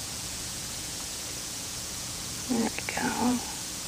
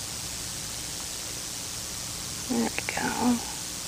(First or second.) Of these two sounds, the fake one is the first